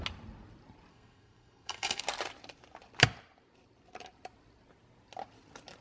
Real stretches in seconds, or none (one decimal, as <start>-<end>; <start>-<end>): 0.0-0.9; 2.0-5.8